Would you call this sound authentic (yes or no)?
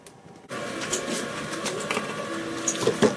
yes